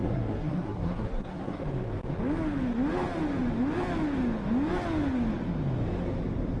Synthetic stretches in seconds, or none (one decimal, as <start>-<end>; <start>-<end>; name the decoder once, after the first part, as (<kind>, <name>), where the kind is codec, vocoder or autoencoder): 0.0-1.6 (codec, SNAC)